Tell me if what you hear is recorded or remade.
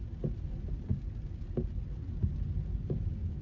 recorded